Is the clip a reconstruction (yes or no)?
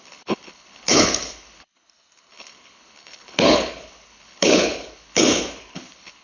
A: yes